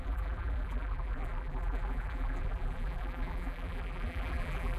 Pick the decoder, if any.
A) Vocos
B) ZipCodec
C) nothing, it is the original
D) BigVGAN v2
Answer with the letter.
D